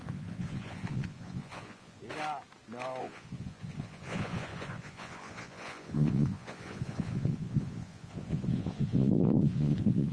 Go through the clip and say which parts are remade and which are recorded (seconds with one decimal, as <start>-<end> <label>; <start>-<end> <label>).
0.0-2.0 remade; 2.0-3.0 recorded; 3.0-10.1 remade